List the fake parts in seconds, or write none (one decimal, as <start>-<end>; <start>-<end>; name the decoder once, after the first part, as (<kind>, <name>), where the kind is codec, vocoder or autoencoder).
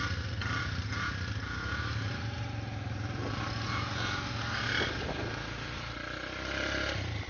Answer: none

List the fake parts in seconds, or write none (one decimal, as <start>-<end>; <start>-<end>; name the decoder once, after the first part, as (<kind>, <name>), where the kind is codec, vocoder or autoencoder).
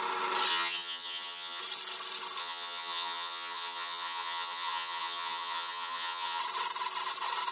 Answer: 0.5-1.6 (vocoder, HiFi-GAN); 2.4-6.4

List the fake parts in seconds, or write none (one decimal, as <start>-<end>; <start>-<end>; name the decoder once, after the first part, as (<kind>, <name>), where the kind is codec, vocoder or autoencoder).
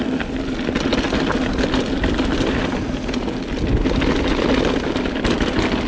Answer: none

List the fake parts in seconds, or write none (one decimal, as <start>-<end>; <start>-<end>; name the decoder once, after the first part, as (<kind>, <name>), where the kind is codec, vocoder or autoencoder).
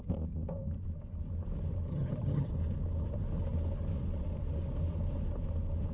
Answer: 1.9-2.5 (vocoder, HiFi-GAN)